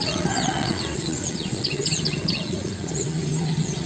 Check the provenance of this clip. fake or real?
fake